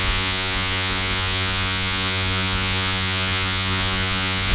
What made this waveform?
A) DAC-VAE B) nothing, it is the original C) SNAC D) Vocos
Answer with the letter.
D